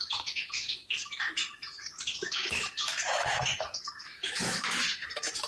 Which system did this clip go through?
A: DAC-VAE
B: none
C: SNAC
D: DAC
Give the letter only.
A